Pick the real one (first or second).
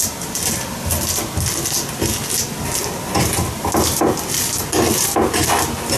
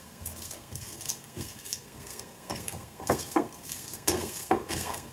first